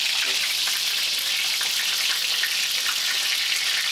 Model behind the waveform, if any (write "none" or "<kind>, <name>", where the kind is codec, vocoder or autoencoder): none